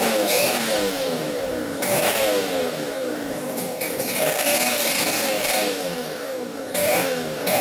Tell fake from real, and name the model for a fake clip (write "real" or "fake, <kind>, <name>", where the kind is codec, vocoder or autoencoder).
fake, codec, DAC